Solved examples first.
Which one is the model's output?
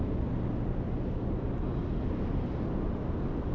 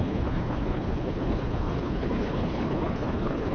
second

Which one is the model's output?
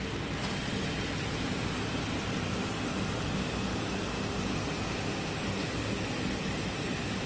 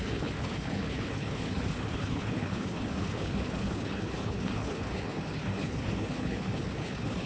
second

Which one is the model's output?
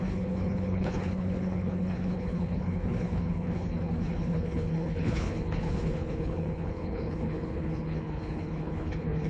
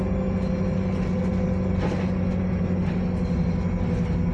first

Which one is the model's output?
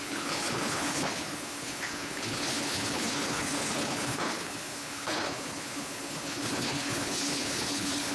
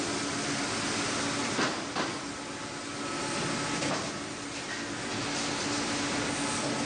first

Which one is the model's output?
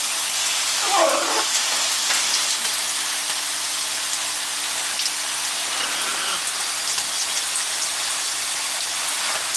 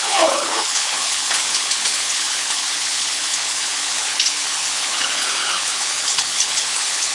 second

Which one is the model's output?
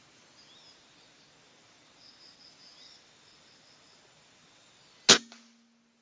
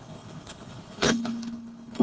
second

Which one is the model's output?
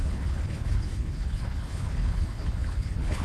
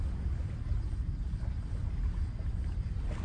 first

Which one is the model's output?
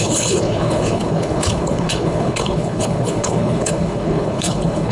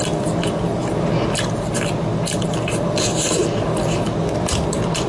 first